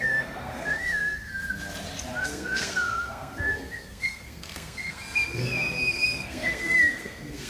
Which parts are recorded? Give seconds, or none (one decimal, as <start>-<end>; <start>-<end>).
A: 1.3-2.2